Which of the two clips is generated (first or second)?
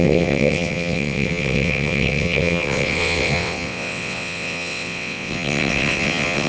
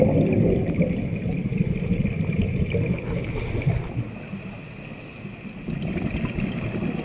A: first